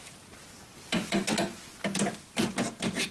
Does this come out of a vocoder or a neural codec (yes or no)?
no